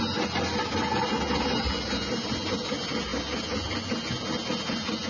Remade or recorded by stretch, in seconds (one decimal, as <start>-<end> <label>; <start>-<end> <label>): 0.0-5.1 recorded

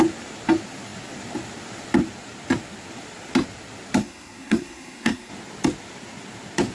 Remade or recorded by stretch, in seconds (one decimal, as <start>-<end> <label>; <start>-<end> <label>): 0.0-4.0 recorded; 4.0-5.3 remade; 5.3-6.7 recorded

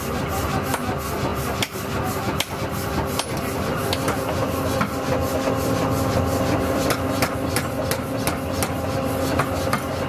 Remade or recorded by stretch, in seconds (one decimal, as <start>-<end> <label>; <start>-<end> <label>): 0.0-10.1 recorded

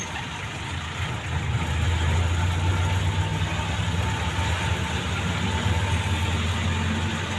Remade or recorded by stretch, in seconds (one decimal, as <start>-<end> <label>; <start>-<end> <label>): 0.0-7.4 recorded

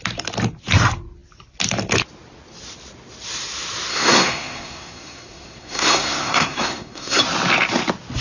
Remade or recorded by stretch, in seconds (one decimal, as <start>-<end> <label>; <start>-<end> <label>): 0.0-3.9 recorded; 3.9-7.2 remade; 7.2-8.2 recorded

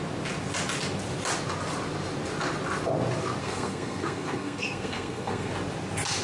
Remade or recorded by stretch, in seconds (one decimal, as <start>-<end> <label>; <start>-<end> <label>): 0.0-3.4 recorded; 3.4-5.5 remade; 5.5-6.2 recorded